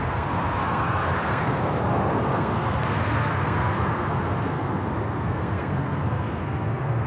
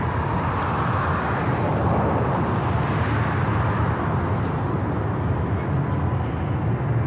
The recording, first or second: second